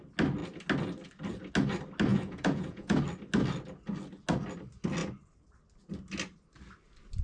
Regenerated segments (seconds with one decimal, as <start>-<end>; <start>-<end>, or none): 2.1-3.0